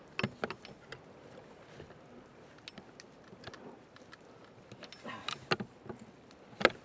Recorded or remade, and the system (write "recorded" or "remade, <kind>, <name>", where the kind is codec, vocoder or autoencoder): recorded